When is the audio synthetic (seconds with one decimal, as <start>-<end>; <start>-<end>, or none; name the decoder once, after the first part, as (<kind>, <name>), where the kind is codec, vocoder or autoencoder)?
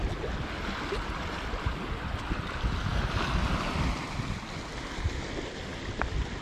none